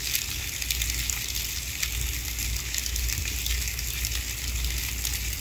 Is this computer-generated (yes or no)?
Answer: no